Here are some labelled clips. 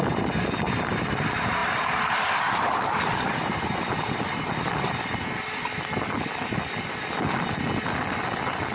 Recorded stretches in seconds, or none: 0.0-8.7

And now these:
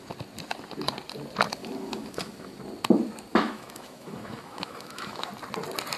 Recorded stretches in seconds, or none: 0.0-1.6; 2.6-3.3; 5.3-6.0

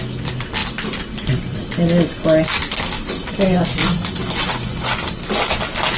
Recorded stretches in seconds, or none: 0.0-3.8; 5.0-6.0

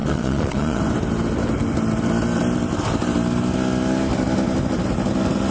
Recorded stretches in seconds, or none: 0.8-5.5